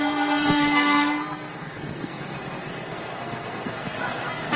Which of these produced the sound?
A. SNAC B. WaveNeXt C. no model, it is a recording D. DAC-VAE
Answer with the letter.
A